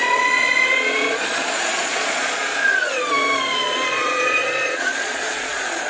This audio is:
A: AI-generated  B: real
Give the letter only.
A